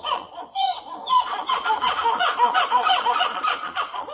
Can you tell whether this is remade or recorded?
remade